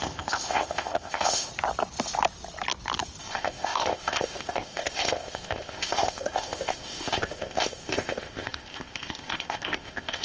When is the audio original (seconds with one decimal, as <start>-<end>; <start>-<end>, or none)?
1.5-3.2